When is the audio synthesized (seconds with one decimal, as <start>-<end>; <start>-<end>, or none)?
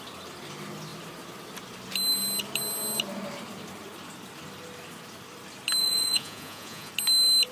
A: 5.8-6.9